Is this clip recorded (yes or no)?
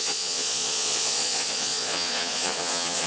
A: no